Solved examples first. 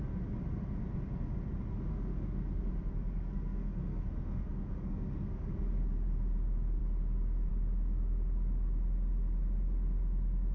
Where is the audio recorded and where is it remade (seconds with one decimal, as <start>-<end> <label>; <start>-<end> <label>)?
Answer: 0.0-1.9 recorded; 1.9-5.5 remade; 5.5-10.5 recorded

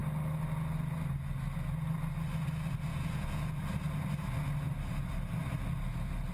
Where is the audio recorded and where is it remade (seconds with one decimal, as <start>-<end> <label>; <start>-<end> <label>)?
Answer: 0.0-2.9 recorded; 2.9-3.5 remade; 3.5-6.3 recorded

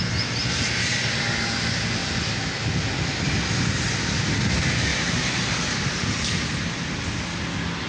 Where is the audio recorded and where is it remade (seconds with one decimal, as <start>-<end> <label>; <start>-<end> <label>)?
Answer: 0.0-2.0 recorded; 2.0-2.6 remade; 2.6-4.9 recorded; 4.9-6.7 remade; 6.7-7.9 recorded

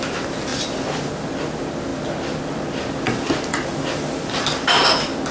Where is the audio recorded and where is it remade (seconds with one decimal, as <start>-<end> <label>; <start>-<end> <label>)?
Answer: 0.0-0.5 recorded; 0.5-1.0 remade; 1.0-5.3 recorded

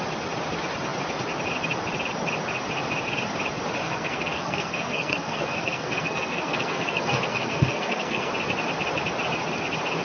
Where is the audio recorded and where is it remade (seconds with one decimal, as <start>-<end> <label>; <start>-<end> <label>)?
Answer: 0.0-3.8 recorded; 3.8-8.3 remade; 8.3-10.0 recorded

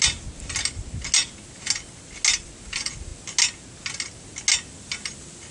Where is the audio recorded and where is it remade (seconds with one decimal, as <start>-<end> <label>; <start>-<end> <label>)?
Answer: 0.0-5.5 recorded

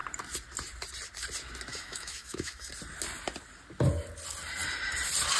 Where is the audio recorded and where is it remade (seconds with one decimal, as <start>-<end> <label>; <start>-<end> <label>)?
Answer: 0.0-1.7 recorded; 1.7-2.7 remade; 2.7-5.4 recorded

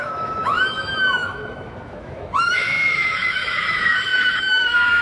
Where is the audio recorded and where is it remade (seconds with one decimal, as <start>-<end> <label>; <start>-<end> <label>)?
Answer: 0.0-5.0 remade